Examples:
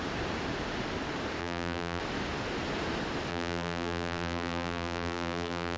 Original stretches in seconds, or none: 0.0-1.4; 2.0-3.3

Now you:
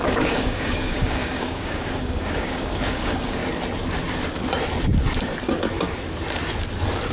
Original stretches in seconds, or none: 3.4-7.1

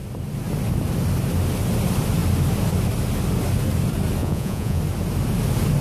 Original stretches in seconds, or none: 0.0-4.2; 4.8-5.8

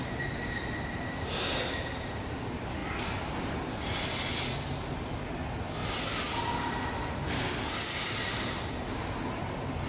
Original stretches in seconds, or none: 0.0-9.9